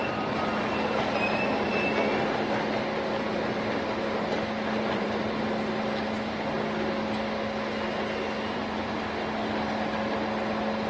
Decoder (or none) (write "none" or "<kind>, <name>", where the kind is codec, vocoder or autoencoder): none